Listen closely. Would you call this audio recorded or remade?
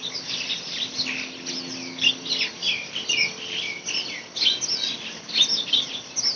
recorded